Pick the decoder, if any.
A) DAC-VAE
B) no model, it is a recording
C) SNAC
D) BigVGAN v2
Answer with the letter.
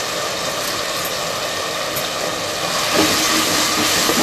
B